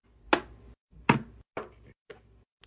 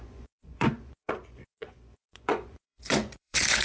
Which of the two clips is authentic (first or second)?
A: first